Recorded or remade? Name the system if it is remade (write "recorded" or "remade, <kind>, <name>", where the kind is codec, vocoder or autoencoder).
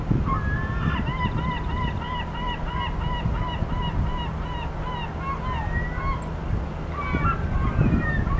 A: recorded